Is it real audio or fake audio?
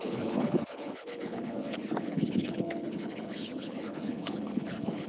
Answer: fake